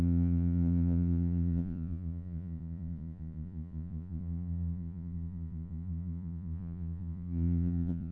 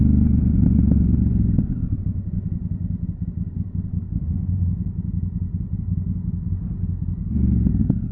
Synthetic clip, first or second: first